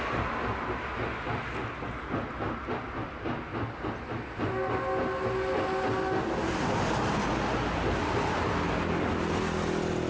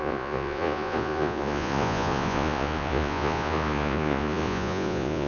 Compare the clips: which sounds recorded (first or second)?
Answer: first